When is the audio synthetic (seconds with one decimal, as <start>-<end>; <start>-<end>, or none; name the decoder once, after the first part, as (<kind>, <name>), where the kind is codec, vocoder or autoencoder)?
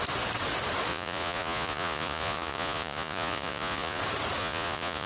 0.9-4.0 (vocoder, Vocos); 4.4-5.1